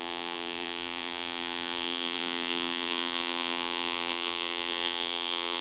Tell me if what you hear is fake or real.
fake